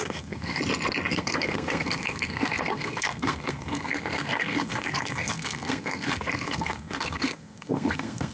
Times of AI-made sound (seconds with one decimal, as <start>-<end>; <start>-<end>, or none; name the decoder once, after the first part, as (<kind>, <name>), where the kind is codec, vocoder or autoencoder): 0.0-0.6 (codec, SNAC); 1.1-8.3